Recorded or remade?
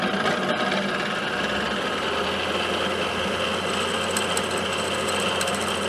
recorded